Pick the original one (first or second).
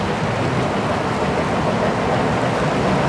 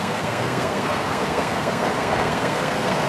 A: first